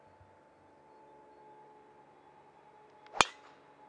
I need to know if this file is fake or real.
real